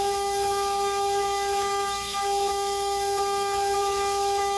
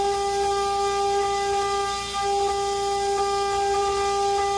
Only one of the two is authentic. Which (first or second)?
second